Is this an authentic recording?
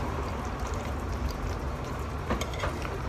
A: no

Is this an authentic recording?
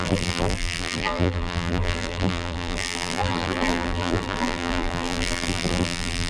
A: no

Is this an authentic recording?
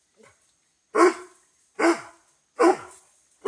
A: yes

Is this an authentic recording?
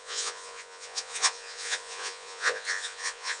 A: no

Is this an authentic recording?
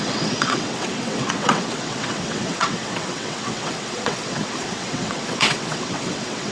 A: no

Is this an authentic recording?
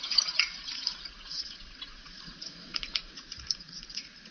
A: no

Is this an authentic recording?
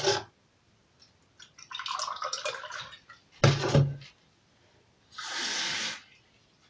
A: yes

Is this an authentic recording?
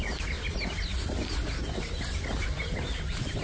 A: yes